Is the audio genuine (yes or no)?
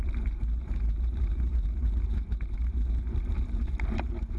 no